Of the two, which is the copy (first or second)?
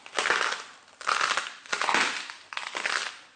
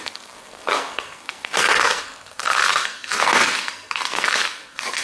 second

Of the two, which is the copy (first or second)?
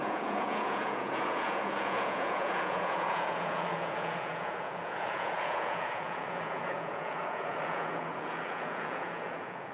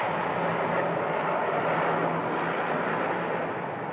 first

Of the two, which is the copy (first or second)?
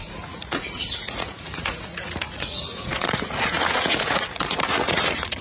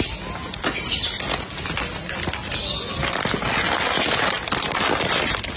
first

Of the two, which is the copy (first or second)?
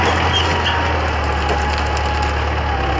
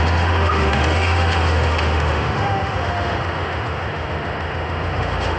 second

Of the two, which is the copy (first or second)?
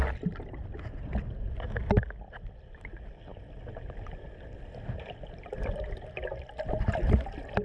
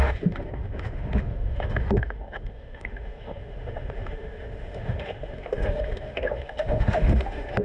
second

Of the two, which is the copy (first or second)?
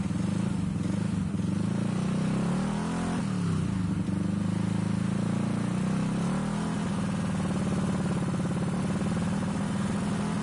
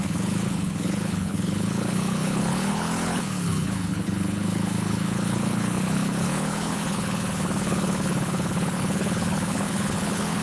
second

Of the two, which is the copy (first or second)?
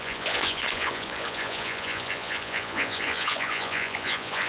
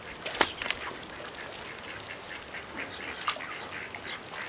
first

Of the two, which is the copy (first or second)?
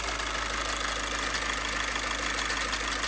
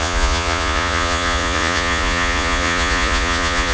second